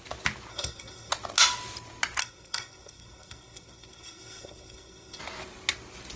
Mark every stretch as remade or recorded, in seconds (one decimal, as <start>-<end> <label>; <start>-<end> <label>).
0.0-0.5 recorded; 0.5-1.1 remade; 1.1-2.2 recorded; 2.2-5.2 remade; 5.2-6.2 recorded

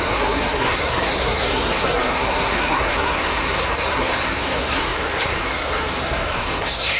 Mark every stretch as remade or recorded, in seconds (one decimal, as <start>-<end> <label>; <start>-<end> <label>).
0.0-7.0 remade

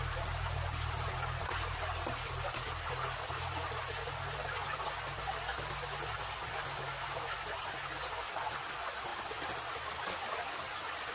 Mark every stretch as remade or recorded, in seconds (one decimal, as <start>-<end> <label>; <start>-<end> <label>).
0.0-11.1 recorded

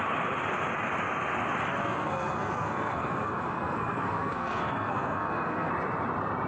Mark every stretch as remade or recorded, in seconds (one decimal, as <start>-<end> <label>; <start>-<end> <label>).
0.0-1.8 recorded; 1.8-5.7 remade; 5.7-6.5 recorded